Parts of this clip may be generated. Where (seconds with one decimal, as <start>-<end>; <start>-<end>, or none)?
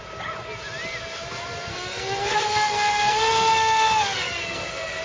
1.7-5.0